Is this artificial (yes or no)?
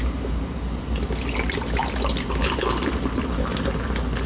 no